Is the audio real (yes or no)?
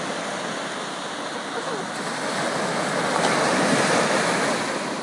yes